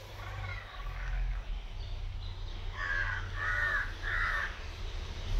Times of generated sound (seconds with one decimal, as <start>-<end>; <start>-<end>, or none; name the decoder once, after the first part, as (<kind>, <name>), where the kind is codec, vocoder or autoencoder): 0.5-1.5 (codec, DAC); 2.5-4.6